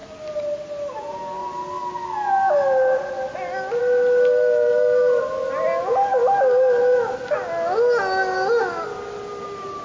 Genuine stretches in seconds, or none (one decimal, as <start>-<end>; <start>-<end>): 0.0-9.8